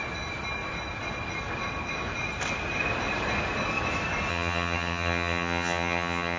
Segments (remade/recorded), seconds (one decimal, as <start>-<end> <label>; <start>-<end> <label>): 0.0-4.3 recorded; 4.3-6.4 remade